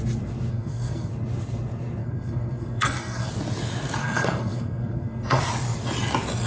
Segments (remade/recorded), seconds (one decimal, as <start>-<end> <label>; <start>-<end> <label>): 0.0-0.5 recorded; 0.5-1.1 remade; 1.1-2.0 recorded; 2.0-3.3 remade; 3.3-4.0 recorded; 4.0-5.4 remade; 5.4-6.5 recorded